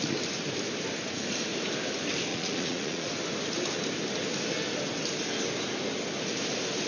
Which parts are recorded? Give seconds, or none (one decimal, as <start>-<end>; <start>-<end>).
0.0-2.3; 3.1-6.9